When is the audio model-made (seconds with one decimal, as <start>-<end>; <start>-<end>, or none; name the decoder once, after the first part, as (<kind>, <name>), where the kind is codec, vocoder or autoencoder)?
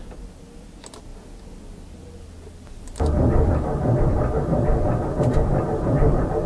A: none